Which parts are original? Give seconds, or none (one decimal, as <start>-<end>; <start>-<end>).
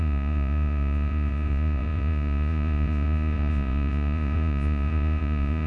none